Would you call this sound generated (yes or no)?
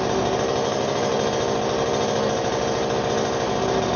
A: no